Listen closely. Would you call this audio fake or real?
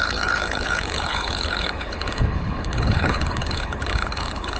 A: fake